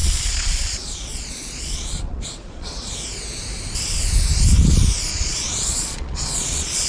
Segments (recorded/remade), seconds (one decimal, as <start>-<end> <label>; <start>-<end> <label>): 0.0-2.9 remade; 2.9-5.1 recorded; 5.1-6.9 remade